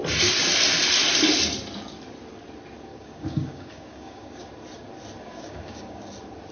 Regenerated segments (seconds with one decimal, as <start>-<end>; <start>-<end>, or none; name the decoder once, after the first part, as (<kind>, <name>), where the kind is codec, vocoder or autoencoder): 2.9-4.5 (codec, DAC); 5.3-6.0